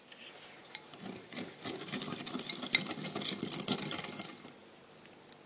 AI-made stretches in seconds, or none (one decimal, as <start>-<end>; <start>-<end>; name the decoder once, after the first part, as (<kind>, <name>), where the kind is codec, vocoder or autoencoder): 0.6-2.2 (vocoder, BigVGAN v2); 4.6-5.1